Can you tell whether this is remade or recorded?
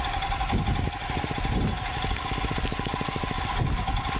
recorded